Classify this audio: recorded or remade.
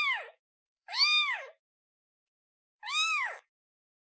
remade